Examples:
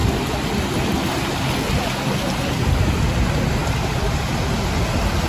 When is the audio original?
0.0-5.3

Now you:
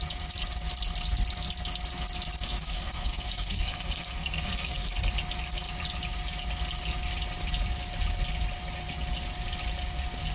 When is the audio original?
0.0-2.5; 4.9-10.3

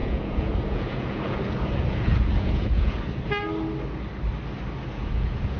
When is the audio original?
3.0-4.9

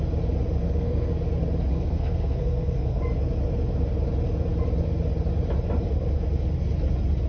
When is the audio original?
0.0-0.6; 1.1-1.7; 3.0-7.3